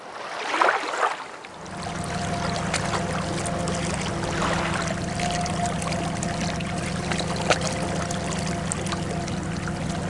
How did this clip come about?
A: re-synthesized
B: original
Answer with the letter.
B